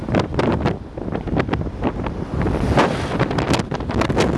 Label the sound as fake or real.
real